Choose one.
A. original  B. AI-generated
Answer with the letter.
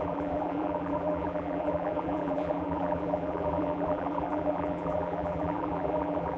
B